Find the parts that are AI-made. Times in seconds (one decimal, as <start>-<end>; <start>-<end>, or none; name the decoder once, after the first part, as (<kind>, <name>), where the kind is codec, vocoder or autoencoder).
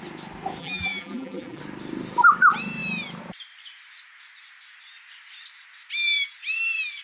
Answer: 0.6-1.6 (vocoder, BigVGAN v2)